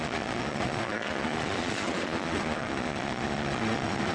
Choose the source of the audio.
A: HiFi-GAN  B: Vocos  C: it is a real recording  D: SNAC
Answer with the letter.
B